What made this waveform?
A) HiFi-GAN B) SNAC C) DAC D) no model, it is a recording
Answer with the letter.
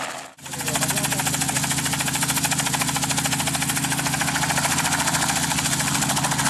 D